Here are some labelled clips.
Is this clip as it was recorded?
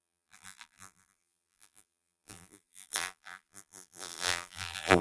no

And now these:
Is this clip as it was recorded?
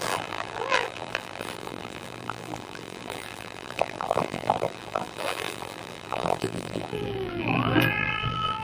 no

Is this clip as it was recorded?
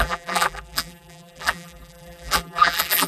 no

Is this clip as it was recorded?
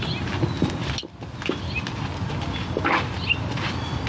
yes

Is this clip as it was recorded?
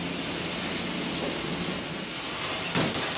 yes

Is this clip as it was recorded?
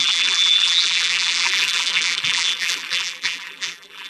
no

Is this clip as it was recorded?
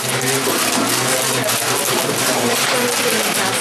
yes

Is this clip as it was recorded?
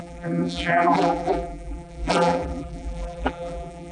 no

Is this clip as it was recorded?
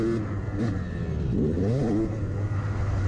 yes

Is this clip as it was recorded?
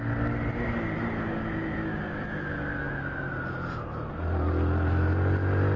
yes